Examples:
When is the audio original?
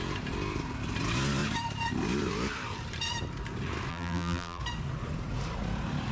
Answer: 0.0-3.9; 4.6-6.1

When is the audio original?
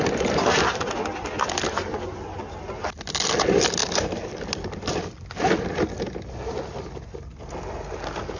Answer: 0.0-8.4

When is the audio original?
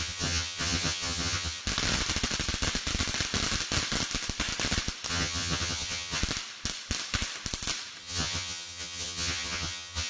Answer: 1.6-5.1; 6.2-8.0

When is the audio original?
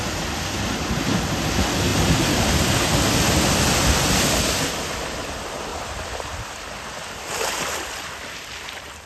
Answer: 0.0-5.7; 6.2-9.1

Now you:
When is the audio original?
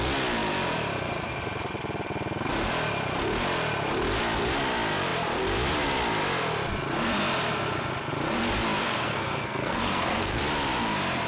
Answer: 0.0-8.8; 10.4-11.3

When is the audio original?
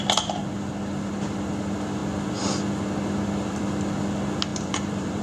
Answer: 0.0-4.5